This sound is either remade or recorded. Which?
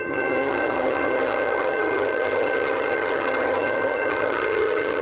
remade